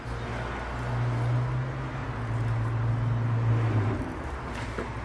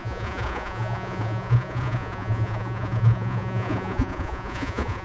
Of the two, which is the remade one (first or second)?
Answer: second